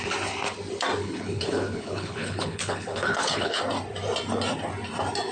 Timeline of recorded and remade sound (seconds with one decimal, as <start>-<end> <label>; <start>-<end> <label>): 0.0-1.0 recorded; 1.0-3.6 remade; 3.6-5.3 recorded